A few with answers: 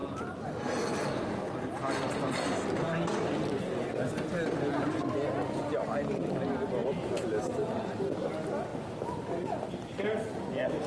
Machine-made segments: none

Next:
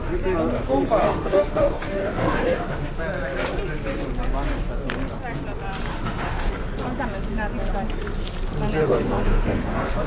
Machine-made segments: 1.0-3.0 (autoencoder, DAC-VAE); 5.9-6.5; 8.8-10.1

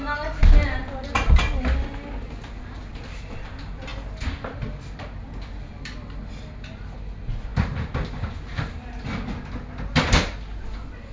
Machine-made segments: none

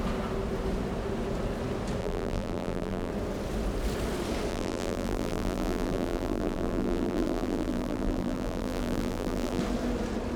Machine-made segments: 2.0-3.1 (vocoder, BigVGAN v2); 4.5-9.6

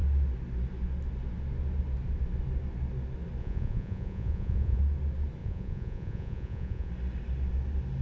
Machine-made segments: 3.4-4.8 (vocoder, Vocos); 5.4-6.9

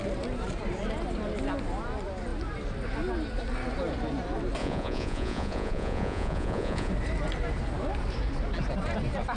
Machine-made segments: 4.6-6.9 (vocoder, Vocos)

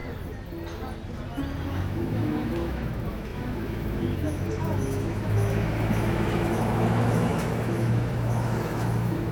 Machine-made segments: 1.7-9.3 (autoencoder, DAC-VAE)